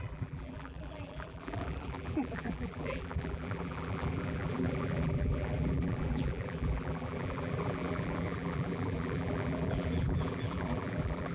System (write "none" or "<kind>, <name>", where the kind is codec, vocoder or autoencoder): vocoder, BigVGAN v2